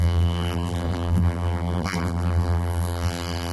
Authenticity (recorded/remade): remade